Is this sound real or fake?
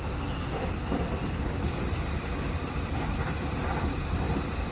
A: real